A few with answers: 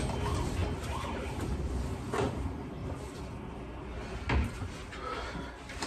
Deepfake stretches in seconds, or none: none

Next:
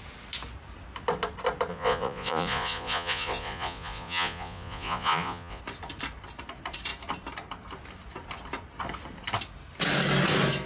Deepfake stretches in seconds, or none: 1.7-5.6 (vocoder, Vocos)

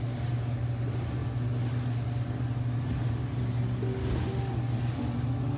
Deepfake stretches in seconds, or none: none

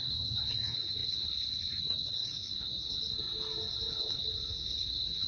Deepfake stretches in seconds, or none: 0.0-2.7 (codec, HILCodec); 3.9-5.3

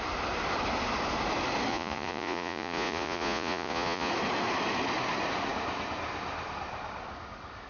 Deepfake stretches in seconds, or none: 1.7-4.1 (vocoder, Vocos)

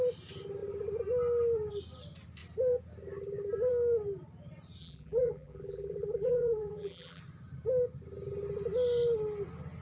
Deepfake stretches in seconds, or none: 4.8-7.2 (vocoder, BigVGAN v2)

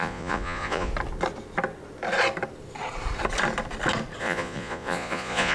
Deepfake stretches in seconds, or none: 0.0-0.9 (vocoder, Vocos); 4.2-5.5